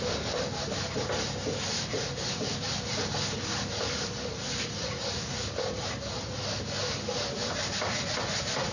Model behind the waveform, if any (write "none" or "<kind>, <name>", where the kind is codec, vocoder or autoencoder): none